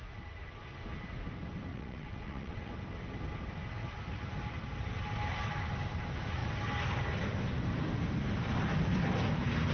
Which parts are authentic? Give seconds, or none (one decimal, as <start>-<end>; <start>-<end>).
0.0-1.7; 2.7-9.7